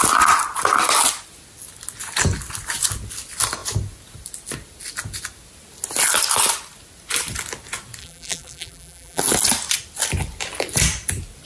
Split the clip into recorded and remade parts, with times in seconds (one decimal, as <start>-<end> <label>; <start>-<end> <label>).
0.0-8.0 recorded; 8.0-9.2 remade; 9.2-11.5 recorded